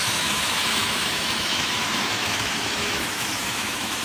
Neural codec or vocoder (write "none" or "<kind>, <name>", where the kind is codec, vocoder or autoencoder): autoencoder, DAC-VAE